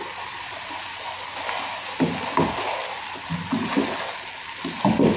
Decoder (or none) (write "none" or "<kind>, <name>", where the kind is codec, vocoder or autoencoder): none